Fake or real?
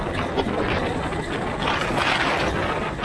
real